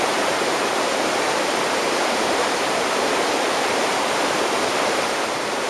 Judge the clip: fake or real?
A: fake